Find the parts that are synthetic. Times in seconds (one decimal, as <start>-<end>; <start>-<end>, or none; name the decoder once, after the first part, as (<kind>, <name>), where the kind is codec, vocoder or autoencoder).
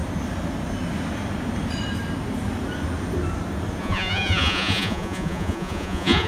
3.8-6.3 (vocoder, Vocos)